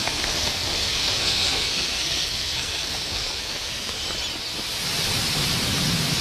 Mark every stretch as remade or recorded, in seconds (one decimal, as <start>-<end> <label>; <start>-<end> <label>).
0.0-4.0 remade; 4.0-6.2 recorded

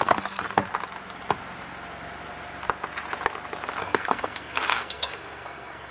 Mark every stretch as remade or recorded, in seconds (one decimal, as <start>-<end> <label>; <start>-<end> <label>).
0.0-0.6 remade; 0.6-3.8 recorded; 3.8-5.9 remade

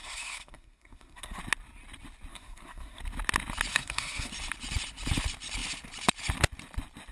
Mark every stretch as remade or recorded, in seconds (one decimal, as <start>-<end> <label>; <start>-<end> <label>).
0.0-1.4 remade; 1.4-2.3 recorded; 2.3-3.0 remade; 3.0-3.7 recorded; 3.7-4.3 remade; 4.3-7.1 recorded

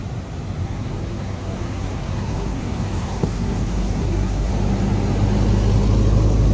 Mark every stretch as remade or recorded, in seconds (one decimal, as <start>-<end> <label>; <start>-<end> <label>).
0.0-0.6 recorded; 0.6-4.5 remade; 4.5-6.5 recorded

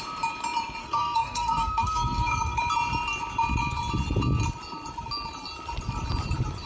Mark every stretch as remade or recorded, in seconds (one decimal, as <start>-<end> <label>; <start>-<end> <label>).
0.0-0.8 recorded; 0.8-2.6 remade; 2.6-6.7 recorded